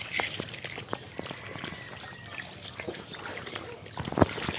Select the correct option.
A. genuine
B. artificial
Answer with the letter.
B